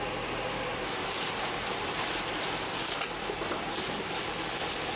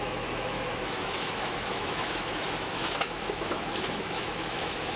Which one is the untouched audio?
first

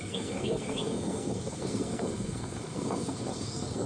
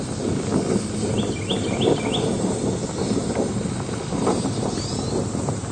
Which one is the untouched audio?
second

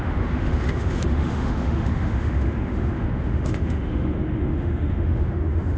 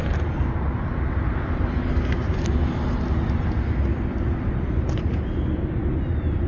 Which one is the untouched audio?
second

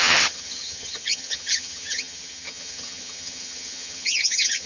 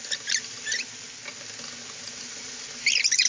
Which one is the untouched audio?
second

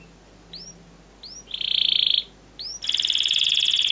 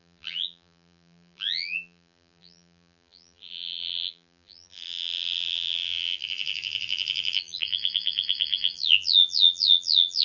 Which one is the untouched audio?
first